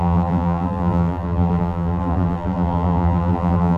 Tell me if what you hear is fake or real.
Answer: fake